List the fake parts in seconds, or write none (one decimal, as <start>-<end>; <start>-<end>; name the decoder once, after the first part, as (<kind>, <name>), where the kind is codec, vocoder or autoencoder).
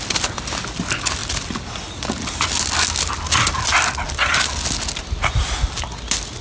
none